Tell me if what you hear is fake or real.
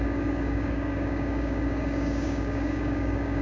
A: fake